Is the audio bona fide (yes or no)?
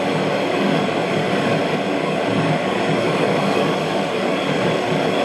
no